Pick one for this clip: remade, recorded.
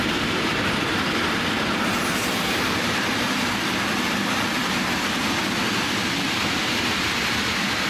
remade